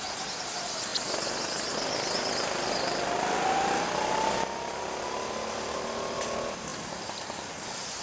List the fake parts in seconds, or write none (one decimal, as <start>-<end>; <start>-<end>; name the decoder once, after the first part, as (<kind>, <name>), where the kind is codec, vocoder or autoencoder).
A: none